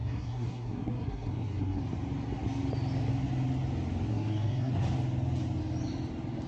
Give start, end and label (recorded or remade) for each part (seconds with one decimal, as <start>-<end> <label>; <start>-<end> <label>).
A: 0.0-1.8 remade; 1.8-4.1 recorded; 4.1-4.7 remade; 4.7-6.5 recorded

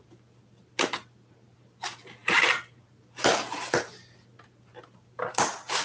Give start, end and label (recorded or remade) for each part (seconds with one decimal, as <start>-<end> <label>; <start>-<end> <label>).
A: 0.0-5.8 recorded

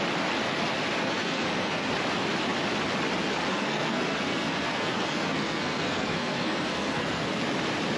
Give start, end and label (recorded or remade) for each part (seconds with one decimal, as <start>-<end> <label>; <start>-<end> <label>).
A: 0.0-1.0 recorded; 1.0-1.9 remade; 1.9-3.5 recorded; 3.5-7.4 remade; 7.4-8.0 recorded

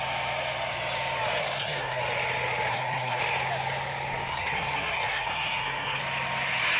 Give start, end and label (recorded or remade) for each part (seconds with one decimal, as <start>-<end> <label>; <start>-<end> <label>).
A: 0.0-1.4 recorded; 1.4-2.0 remade; 2.0-2.7 recorded; 2.7-3.2 remade; 3.2-4.3 recorded; 4.3-6.0 remade; 6.0-6.8 recorded

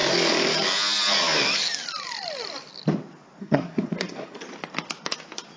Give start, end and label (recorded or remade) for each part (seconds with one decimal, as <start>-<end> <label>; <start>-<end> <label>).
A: 0.0-3.4 recorded; 3.4-4.4 remade; 4.4-5.6 recorded

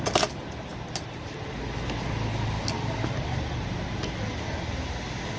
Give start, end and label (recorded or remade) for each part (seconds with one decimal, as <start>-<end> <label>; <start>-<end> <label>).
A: 0.0-5.4 recorded